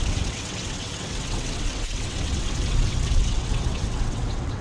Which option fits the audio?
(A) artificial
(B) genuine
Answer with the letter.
A